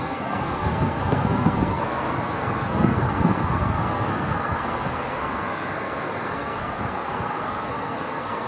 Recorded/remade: remade